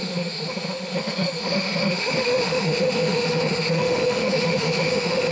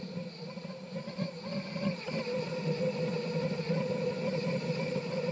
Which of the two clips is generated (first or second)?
first